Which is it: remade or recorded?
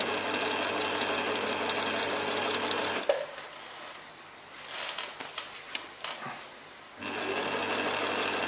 recorded